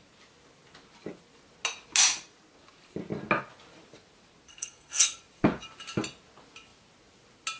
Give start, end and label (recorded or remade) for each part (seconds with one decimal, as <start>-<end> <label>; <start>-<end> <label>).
0.0-4.5 recorded; 4.5-5.2 remade; 5.2-7.6 recorded